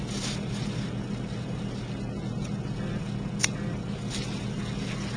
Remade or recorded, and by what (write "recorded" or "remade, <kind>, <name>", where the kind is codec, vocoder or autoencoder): recorded